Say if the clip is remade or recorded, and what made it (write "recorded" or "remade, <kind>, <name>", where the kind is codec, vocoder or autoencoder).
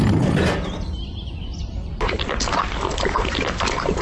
recorded